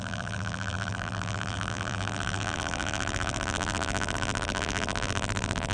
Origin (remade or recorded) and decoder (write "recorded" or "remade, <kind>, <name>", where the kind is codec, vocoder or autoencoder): remade, vocoder, BigVGAN v2